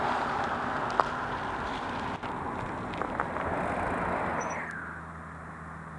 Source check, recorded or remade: recorded